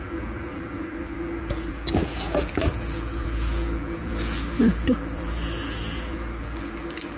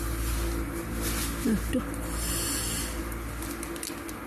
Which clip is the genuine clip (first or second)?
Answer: second